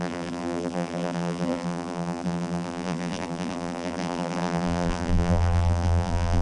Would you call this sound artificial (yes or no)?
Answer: yes